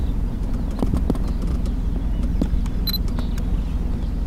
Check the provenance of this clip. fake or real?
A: real